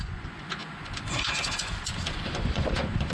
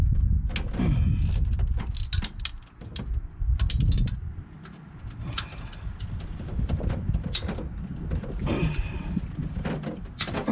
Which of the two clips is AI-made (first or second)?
first